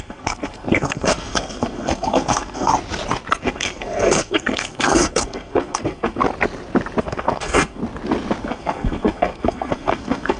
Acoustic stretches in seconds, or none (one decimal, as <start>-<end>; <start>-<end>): 2.7-3.4; 6.2-7.0; 7.8-8.4